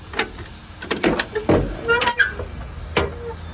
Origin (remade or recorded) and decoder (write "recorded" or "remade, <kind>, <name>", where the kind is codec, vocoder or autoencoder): recorded